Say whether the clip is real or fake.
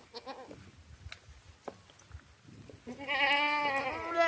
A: real